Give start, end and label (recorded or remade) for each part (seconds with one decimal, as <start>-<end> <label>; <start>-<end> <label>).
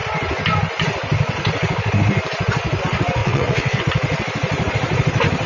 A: 0.0-3.2 recorded; 3.2-3.8 remade; 3.8-5.5 recorded